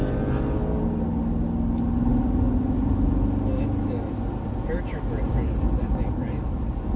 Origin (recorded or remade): recorded